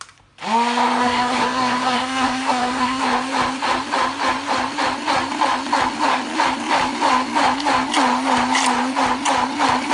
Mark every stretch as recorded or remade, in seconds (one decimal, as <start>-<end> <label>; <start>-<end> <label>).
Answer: 0.0-1.0 recorded; 1.0-3.0 remade; 3.0-9.9 recorded